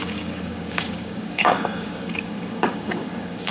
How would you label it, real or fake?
fake